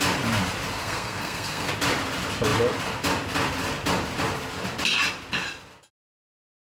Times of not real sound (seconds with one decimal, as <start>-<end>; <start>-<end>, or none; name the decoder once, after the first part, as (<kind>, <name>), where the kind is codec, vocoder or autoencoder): 0.8-1.7 (codec, SNAC)